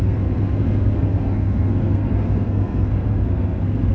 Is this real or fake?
fake